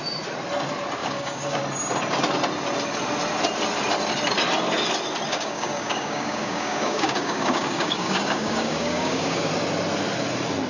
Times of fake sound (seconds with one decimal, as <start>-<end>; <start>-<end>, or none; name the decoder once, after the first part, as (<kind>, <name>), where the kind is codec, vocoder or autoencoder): 1.0-1.6 (codec, DAC); 5.3-9.5